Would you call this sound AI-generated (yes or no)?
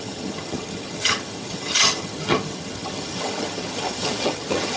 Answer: yes